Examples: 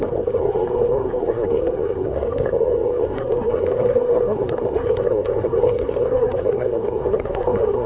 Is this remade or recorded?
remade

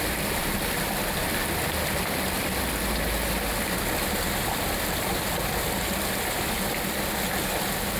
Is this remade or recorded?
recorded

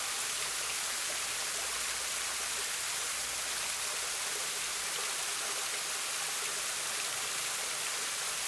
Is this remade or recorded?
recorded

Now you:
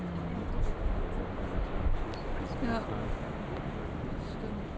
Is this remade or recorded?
recorded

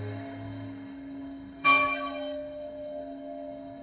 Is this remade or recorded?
remade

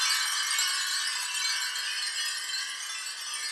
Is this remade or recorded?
recorded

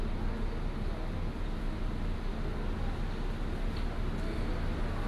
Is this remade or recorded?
recorded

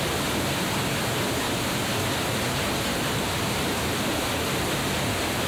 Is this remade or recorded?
recorded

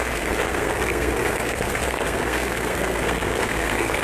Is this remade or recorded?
remade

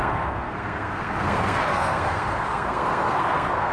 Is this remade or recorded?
remade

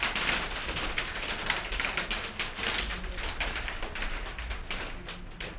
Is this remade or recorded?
recorded